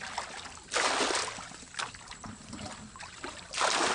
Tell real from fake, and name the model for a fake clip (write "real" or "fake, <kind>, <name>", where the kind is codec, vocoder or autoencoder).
real